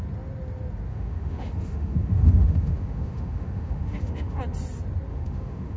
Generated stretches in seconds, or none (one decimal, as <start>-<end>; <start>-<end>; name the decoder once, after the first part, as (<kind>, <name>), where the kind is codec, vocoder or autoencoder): 0.9-4.4 (autoencoder, DAC-VAE); 5.1-5.8